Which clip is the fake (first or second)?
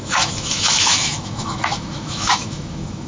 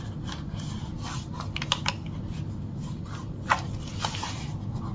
first